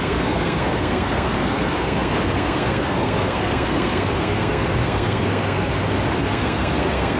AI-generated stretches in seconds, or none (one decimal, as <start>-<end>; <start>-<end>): 0.0-5.7; 6.2-7.2